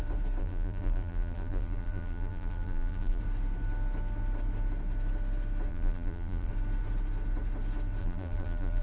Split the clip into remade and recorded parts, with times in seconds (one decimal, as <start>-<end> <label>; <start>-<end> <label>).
0.0-0.4 recorded; 0.4-3.2 remade; 3.2-5.7 recorded; 5.7-6.5 remade; 6.5-8.0 recorded; 8.0-8.8 remade